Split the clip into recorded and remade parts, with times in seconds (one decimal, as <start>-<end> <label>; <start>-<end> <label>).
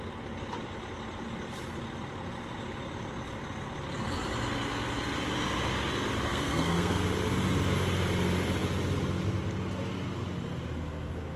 0.0-6.3 recorded; 6.3-7.0 remade; 7.0-11.4 recorded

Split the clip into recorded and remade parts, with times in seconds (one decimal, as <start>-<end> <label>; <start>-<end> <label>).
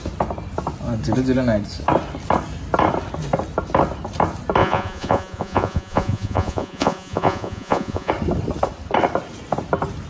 0.0-4.6 recorded; 4.6-8.1 remade; 8.1-10.1 recorded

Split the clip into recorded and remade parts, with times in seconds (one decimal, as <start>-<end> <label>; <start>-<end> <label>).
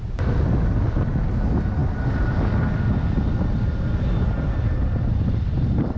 0.0-6.0 recorded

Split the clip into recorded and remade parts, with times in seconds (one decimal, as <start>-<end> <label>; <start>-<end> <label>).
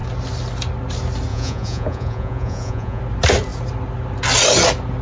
0.0-1.3 recorded; 1.3-3.0 remade; 3.0-5.0 recorded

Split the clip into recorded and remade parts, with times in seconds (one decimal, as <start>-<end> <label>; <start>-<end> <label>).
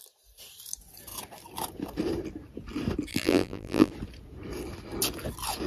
0.0-3.1 recorded; 3.1-3.9 remade; 3.9-5.7 recorded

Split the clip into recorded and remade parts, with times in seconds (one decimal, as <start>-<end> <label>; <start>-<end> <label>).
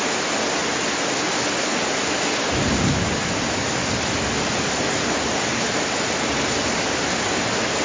0.0-7.8 recorded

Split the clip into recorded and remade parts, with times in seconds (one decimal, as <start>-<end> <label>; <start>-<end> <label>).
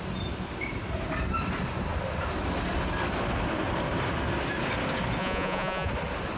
0.0-5.2 recorded; 5.2-5.9 remade; 5.9-6.4 recorded